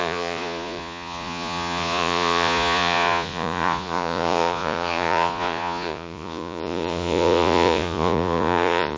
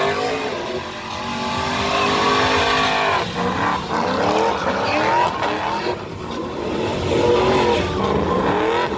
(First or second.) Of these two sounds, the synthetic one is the first